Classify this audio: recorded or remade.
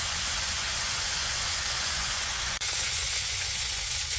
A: remade